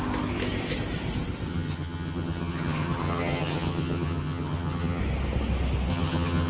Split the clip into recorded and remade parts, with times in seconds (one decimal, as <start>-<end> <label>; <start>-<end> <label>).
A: 0.0-1.5 recorded; 1.5-5.0 remade; 5.0-5.9 recorded; 5.9-6.5 remade